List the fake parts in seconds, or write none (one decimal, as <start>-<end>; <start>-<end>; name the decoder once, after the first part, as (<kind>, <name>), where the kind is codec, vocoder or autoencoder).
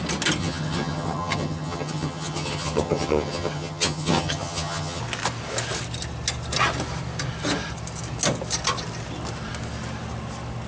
0.4-5.0 (vocoder, HiFi-GAN)